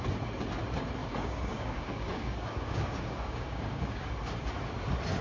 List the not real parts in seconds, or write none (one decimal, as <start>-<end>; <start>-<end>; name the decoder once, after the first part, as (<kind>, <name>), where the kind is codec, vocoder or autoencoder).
1.0-4.1 (codec, DAC)